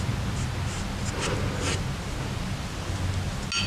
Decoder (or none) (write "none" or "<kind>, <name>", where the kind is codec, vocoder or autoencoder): none